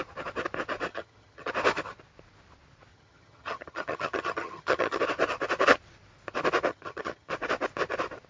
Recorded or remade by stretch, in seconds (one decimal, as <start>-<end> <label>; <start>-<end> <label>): 0.0-0.9 recorded; 0.9-1.5 remade; 1.5-2.9 recorded; 2.9-5.0 remade; 5.0-6.7 recorded; 6.7-7.3 remade; 7.3-8.3 recorded